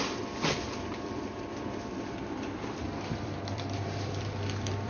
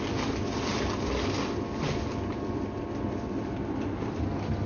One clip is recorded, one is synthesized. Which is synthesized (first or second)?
first